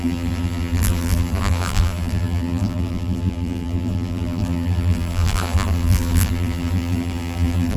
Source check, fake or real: fake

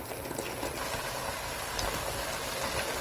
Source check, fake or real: real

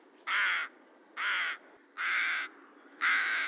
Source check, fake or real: real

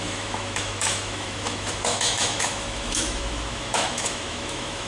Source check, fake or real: fake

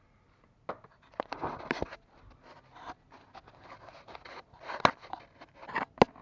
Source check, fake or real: real